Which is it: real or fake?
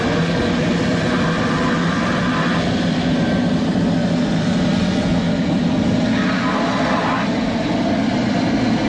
real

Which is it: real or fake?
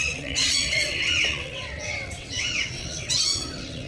fake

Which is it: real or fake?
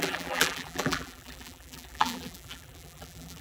fake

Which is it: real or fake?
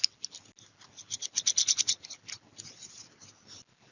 real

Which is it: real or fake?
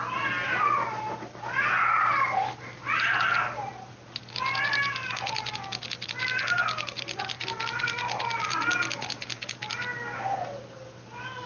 real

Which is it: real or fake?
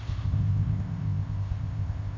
fake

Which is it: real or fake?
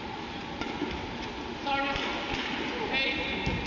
real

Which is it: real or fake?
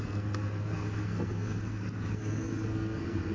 fake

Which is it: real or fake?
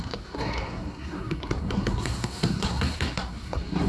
fake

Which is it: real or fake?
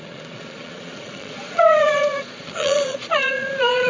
fake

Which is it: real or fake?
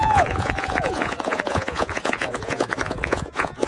fake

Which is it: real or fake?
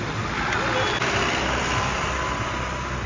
real